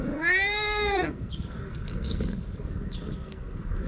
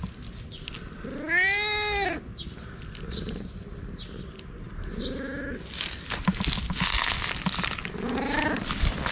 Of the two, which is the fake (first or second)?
first